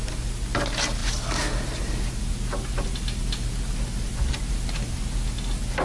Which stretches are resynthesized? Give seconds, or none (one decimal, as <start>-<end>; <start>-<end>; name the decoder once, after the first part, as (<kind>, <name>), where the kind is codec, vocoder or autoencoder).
none